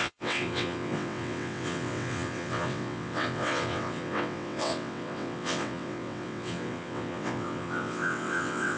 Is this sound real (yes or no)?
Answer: no